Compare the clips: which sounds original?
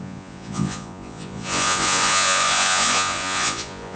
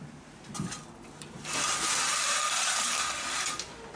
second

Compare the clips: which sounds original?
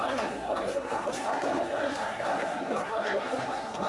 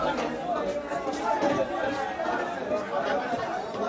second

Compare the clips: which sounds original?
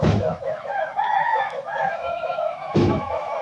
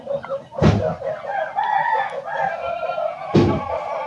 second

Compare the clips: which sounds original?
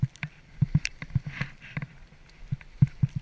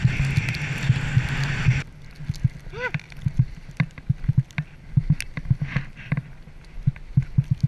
second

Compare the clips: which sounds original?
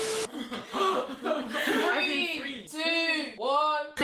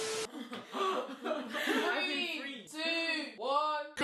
second